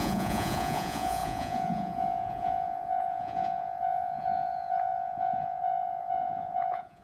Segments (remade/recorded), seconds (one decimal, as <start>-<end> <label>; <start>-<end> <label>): 0.0-7.0 remade